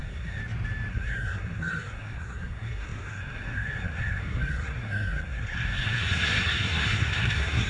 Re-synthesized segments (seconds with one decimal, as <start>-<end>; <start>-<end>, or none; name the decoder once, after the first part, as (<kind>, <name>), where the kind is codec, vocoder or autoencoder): 0.0-0.4 (codec, SNAC); 0.9-7.7